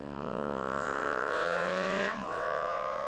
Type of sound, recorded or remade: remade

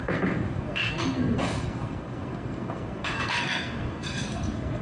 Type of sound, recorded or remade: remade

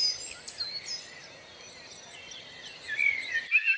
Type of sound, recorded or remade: recorded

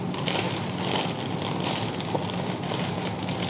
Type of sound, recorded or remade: recorded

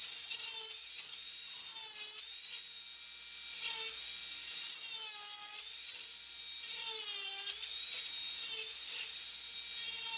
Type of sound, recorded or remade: recorded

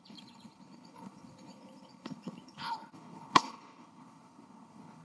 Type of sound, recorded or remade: remade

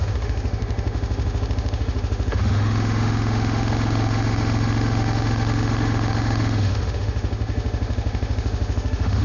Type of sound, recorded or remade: remade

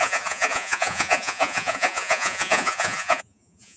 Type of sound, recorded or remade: remade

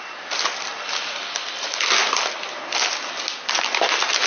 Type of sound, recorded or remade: recorded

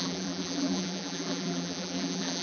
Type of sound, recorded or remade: remade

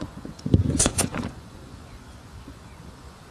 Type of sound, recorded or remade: remade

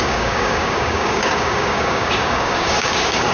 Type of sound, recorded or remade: remade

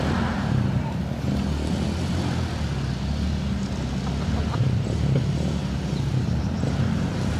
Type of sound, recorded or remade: recorded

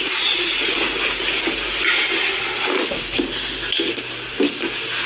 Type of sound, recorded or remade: recorded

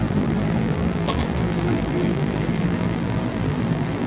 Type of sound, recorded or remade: remade